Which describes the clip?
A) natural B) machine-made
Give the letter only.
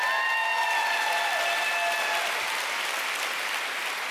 A